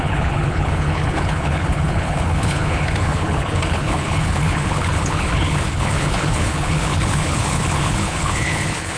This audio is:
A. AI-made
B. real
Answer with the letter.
A